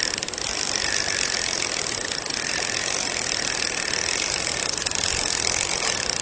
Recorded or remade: recorded